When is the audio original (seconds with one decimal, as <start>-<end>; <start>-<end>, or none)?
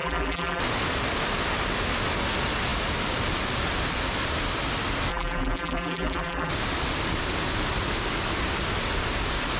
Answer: 0.6-5.1; 6.5-9.6